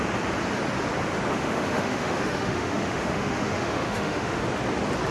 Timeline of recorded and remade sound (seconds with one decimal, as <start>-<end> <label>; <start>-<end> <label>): 0.0-1.3 recorded; 1.3-4.4 remade; 4.4-5.1 recorded